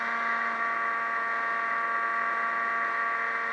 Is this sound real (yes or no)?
yes